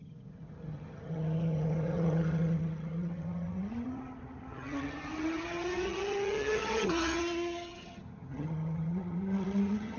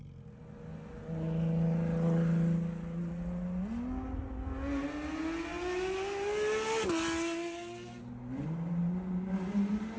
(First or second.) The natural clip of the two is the second